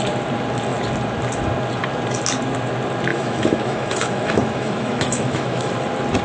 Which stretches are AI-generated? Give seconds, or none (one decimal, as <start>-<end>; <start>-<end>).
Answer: 3.1-5.7